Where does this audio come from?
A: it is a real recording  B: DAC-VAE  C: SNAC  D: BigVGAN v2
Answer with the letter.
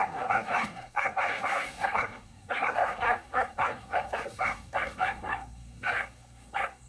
C